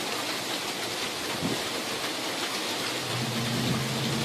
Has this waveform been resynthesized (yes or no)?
no